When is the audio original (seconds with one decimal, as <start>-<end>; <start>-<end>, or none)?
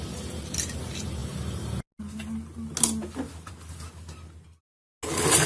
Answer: 0.0-5.5